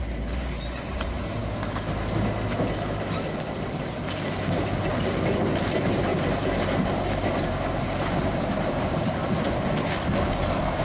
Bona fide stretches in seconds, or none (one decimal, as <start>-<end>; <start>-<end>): 0.0-6.1; 9.4-10.8